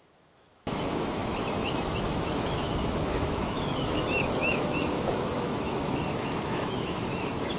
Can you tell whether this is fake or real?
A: fake